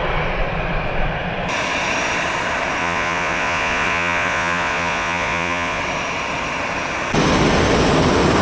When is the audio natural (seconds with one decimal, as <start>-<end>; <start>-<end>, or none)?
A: 0.0-2.8; 5.8-8.4